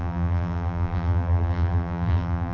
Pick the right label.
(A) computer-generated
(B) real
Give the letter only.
A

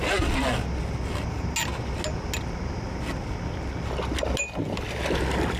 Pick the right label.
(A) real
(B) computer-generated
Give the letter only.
A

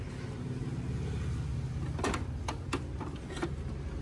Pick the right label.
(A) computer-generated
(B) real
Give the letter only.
B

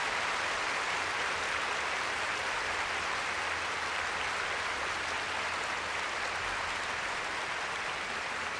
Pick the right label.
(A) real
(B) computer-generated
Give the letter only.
A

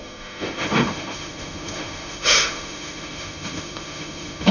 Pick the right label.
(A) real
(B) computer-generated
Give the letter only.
B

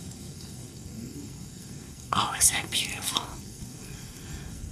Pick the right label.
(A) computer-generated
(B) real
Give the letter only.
A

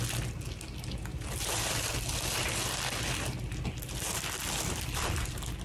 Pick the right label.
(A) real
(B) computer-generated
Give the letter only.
A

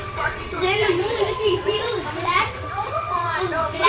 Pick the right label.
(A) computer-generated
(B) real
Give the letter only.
A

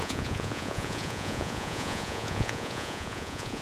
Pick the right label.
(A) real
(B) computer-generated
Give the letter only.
B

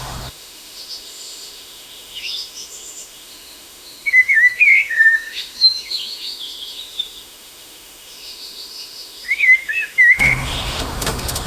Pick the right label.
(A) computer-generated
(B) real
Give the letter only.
A